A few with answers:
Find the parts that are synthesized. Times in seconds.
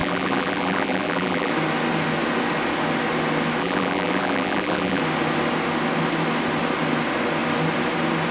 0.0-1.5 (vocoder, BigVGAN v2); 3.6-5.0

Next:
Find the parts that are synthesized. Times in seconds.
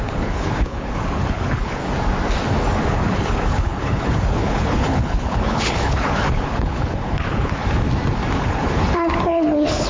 0.0-1.8 (codec, HILCodec); 2.9-7.6; 8.4-9.9